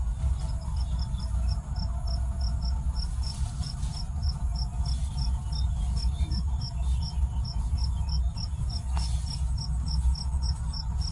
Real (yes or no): yes